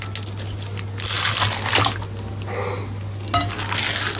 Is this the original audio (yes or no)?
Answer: yes